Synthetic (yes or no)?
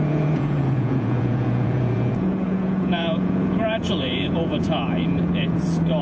yes